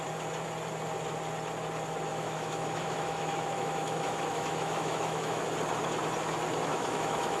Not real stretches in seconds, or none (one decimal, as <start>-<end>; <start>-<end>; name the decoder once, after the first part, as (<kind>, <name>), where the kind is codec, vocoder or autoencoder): 2.1-5.4 (autoencoder, DAC-VAE); 6.7-7.4

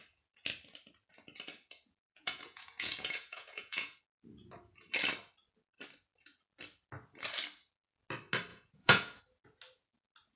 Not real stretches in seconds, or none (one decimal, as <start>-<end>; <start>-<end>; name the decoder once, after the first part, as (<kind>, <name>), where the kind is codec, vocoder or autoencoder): 2.1-4.0 (vocoder, Vocos); 8.5-9.2

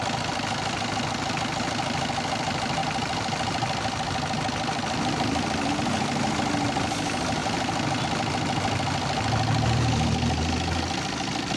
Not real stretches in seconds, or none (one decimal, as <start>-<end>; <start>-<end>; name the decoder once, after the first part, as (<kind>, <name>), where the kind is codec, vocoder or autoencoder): 2.8-5.7 (vocoder, BigVGAN v2); 7.4-8.0

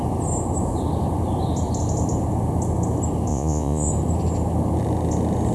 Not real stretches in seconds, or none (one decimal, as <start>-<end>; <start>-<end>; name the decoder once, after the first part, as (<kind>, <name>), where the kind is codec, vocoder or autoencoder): 3.3-3.9 (vocoder, Vocos)

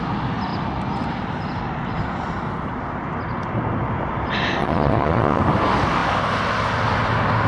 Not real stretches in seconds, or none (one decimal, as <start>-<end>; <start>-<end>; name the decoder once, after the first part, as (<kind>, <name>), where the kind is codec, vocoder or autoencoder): 4.6-5.4 (vocoder, Vocos)

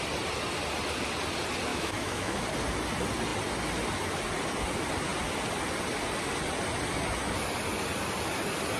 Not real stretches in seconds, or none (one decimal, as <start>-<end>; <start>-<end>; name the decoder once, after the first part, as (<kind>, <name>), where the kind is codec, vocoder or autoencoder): 1.7-2.4 (autoencoder, DAC-VAE)

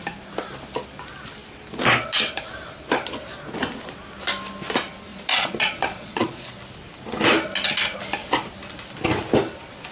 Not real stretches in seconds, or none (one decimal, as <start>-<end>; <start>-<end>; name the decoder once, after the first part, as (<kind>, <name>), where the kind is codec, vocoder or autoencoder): 5.1-6.6 (vocoder, Vocos)